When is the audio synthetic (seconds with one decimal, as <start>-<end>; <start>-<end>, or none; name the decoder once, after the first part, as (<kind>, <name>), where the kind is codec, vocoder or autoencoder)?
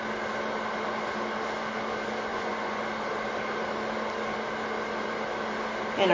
2.3-2.8 (vocoder, Vocos)